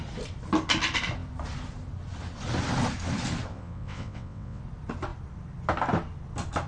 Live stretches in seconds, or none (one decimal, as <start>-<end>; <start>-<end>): 0.0-3.5; 4.6-6.7